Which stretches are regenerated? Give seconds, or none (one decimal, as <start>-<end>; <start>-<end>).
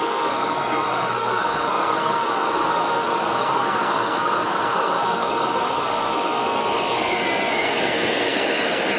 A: 0.0-9.0